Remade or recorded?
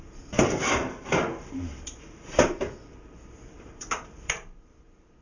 remade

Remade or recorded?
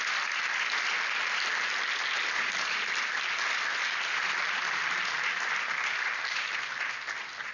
recorded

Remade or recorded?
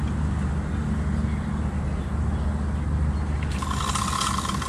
recorded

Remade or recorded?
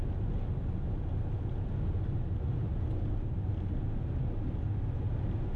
recorded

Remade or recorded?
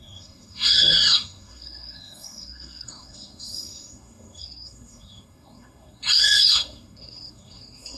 remade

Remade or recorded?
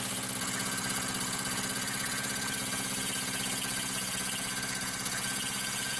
remade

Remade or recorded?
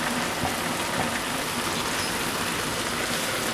recorded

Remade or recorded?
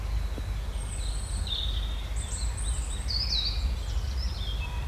recorded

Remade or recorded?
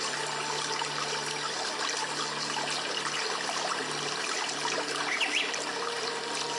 recorded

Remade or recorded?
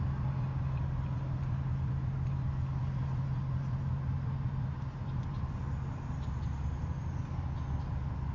recorded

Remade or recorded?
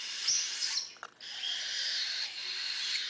remade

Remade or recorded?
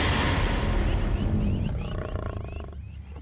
recorded